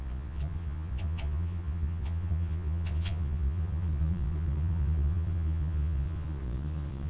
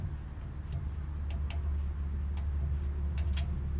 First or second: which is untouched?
second